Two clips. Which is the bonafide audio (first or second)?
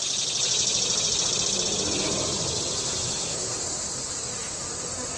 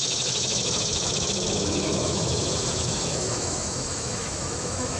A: first